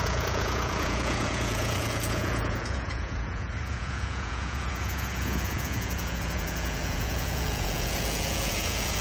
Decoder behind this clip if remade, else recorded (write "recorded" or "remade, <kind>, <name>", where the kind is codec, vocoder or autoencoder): remade, vocoder, Vocos